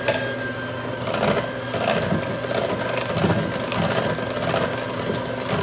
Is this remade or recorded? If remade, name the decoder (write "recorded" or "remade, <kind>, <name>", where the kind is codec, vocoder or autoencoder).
recorded